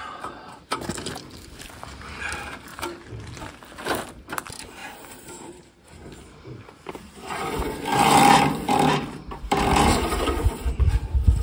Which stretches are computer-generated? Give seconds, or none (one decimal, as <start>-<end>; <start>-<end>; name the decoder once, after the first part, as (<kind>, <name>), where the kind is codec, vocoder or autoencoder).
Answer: 4.8-7.4 (vocoder, BigVGAN v2); 7.9-10.9